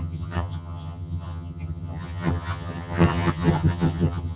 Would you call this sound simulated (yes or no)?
yes